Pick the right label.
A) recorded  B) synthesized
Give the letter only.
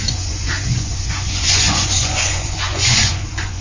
B